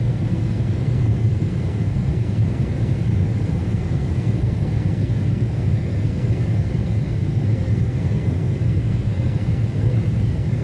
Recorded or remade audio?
remade